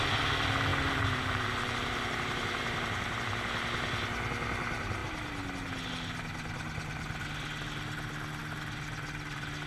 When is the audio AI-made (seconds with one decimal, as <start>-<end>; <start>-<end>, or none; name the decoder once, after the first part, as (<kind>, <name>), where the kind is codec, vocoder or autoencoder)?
0.7-3.2 (vocoder, BigVGAN v2)